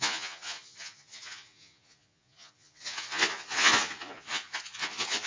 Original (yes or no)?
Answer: no